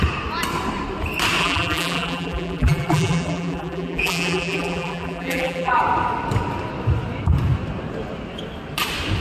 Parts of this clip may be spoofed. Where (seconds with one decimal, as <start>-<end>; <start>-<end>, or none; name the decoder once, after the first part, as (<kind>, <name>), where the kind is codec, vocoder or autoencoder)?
1.4-5.8 (vocoder, BigVGAN v2)